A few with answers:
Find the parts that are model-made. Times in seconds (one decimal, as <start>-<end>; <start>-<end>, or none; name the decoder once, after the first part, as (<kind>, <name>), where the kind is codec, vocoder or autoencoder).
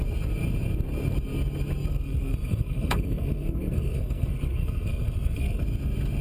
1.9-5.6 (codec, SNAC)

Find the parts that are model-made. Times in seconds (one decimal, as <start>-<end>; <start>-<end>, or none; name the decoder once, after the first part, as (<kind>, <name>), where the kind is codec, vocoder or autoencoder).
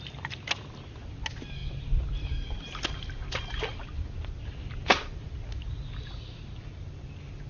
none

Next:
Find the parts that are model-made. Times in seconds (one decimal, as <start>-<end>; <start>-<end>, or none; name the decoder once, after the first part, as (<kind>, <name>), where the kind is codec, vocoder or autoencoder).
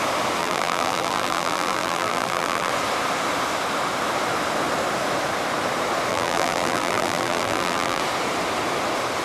0.4-2.7 (vocoder, BigVGAN v2); 6.1-8.0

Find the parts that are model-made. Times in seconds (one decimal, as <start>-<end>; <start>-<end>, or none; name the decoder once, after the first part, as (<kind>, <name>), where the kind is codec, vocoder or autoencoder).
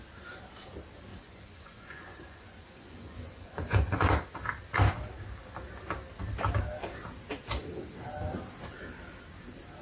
1.1-4.3 (vocoder, Vocos)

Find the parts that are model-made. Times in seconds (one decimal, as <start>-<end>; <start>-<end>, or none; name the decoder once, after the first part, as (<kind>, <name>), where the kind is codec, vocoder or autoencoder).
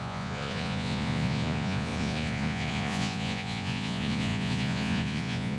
0.0-5.6 (vocoder, Vocos)